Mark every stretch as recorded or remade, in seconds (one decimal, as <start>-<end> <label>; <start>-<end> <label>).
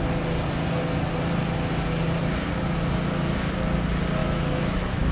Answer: 0.0-4.2 recorded; 4.2-5.1 remade